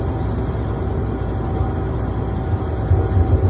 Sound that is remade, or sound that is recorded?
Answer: recorded